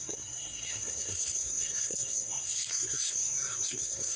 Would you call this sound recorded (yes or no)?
no